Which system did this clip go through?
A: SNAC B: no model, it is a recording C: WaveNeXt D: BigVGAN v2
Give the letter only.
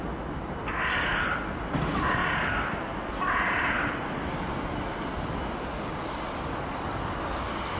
B